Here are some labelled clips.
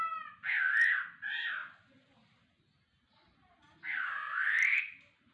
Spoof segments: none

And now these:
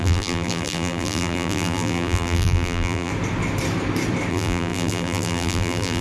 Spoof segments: 0.0-3.1 (vocoder, BigVGAN v2); 4.3-6.0

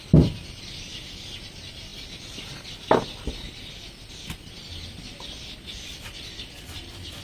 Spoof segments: none

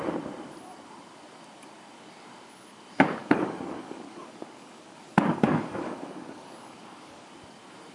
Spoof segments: 3.2-7.3 (codec, DAC)

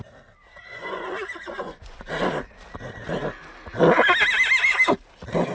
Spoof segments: 0.7-2.1 (vocoder, Vocos)